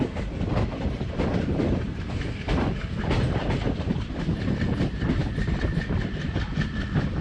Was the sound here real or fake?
fake